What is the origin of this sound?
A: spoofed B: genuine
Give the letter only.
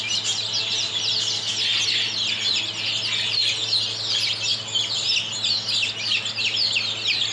B